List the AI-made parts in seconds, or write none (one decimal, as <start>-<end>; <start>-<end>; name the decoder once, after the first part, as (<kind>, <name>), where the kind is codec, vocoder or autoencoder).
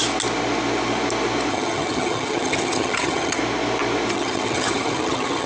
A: 1.5-3.4 (vocoder, HiFi-GAN); 4.1-5.5